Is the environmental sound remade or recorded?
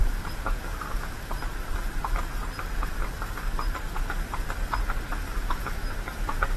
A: recorded